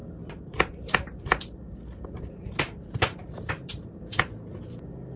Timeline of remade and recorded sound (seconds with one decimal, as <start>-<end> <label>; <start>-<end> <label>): 0.0-3.2 recorded; 3.2-4.0 remade; 4.0-5.2 recorded